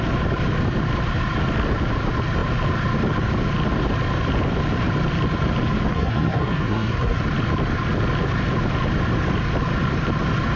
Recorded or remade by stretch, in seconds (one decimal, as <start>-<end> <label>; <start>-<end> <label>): 0.0-5.9 recorded; 5.9-7.2 remade; 7.2-10.6 recorded